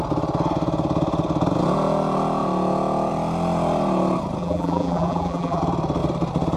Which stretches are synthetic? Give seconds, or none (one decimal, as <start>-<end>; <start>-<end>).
4.4-5.6